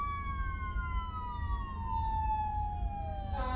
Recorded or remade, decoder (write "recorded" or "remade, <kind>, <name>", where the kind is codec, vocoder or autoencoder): recorded